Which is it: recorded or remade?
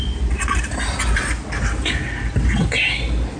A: recorded